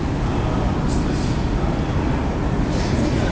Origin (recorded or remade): recorded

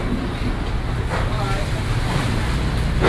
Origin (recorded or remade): recorded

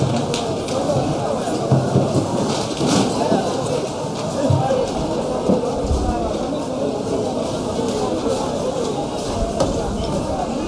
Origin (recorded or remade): recorded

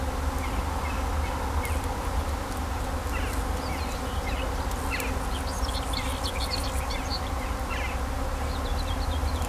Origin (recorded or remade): recorded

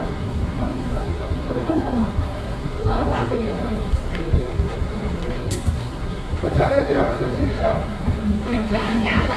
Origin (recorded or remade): remade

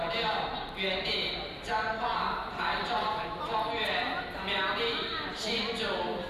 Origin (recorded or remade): recorded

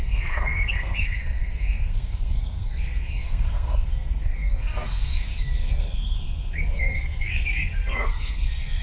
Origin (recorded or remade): remade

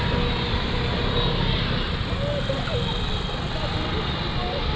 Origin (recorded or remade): recorded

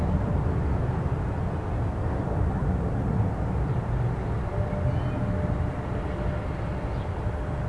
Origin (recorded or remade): recorded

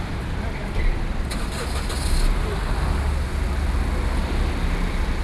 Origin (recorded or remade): recorded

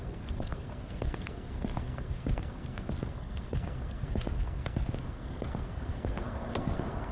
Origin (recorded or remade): remade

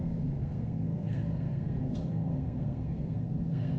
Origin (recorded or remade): remade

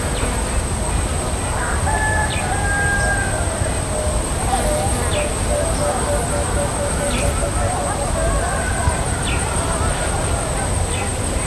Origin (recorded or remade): recorded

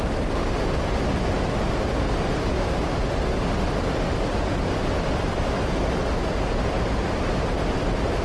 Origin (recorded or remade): recorded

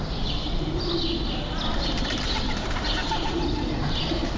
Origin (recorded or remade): recorded